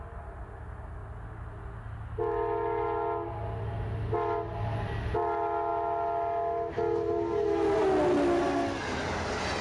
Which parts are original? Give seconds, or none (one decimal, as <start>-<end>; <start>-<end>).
0.0-9.6